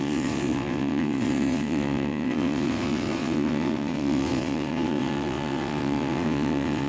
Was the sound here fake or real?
fake